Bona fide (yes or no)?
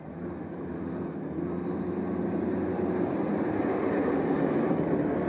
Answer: yes